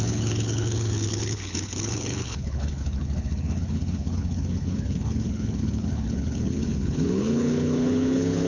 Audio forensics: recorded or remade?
remade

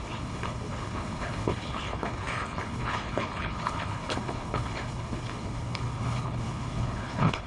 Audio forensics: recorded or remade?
remade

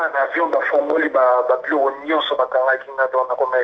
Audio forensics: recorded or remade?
recorded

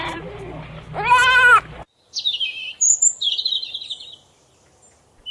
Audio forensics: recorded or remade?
recorded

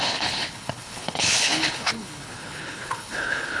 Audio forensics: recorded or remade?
remade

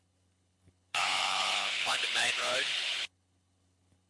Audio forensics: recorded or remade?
remade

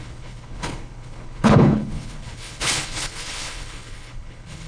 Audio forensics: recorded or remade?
remade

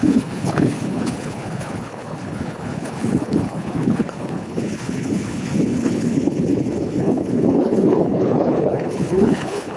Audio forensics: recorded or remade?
remade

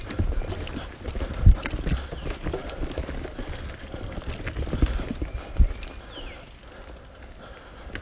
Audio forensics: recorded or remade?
recorded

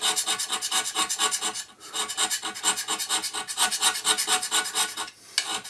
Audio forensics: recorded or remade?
recorded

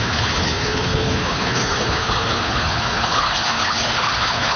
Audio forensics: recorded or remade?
remade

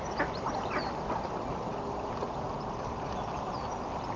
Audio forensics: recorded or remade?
recorded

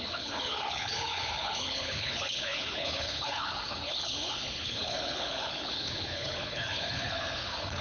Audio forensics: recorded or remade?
remade